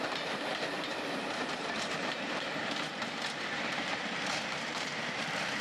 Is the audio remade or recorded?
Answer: remade